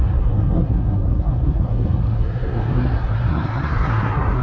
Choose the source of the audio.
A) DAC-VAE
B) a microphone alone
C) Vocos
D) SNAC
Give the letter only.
D